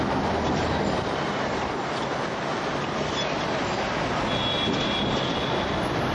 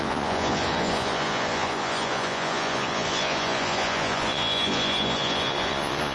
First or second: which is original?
first